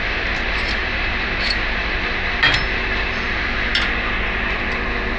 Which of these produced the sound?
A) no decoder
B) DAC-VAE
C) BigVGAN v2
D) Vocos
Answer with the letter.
A